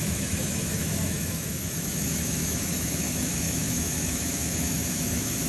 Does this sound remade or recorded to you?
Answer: remade